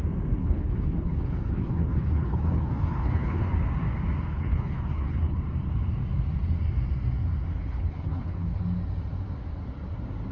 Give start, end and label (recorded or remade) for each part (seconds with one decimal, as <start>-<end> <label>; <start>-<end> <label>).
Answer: 0.0-0.4 recorded; 0.4-3.5 remade; 3.5-4.3 recorded; 4.3-5.4 remade; 5.4-7.5 recorded; 7.5-8.6 remade; 8.6-10.3 recorded